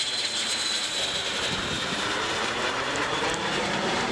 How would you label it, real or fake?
fake